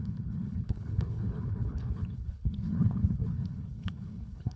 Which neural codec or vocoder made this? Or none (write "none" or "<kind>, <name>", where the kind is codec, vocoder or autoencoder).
codec, HILCodec